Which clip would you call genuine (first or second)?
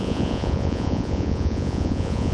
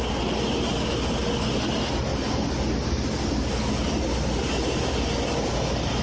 second